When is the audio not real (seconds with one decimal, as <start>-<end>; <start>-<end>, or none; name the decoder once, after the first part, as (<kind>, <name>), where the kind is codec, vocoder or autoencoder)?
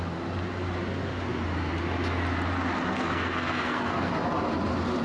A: 2.9-4.1 (codec, SNAC)